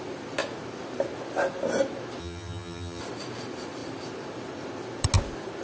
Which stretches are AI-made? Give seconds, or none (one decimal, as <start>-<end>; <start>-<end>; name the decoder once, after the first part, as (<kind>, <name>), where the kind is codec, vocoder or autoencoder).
2.2-3.0 (vocoder, HiFi-GAN)